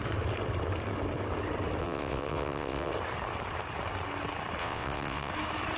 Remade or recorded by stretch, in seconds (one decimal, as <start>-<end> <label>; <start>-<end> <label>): 0.0-1.8 recorded; 1.8-2.9 remade; 2.9-4.6 recorded; 4.6-5.3 remade; 5.3-5.8 recorded